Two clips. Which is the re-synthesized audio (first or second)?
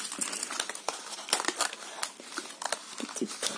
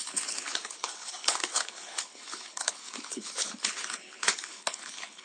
second